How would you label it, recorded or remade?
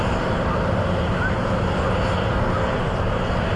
recorded